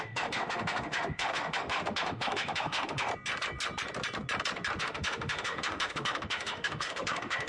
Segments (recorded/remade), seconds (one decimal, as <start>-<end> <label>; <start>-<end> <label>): 0.0-3.1 remade; 3.1-4.8 recorded; 4.8-7.5 remade

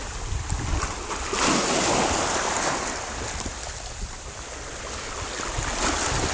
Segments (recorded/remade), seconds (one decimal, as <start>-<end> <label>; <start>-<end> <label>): 0.0-6.3 recorded

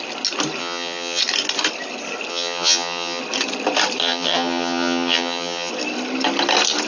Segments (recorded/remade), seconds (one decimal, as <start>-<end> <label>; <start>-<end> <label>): 0.0-0.6 recorded; 0.6-1.2 remade; 1.2-2.3 recorded; 2.3-3.2 remade; 3.2-4.0 recorded; 4.0-5.7 remade; 5.7-6.9 recorded